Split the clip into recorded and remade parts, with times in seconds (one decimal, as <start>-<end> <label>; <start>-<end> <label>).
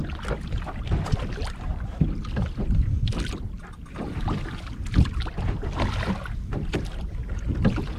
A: 0.0-8.0 recorded